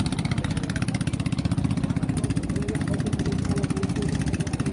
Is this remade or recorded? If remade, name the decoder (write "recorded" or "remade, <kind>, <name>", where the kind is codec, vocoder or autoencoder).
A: recorded